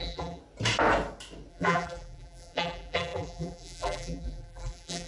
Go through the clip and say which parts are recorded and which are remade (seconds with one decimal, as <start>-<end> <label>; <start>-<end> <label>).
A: 0.0-0.4 remade; 0.4-1.5 recorded; 1.5-5.1 remade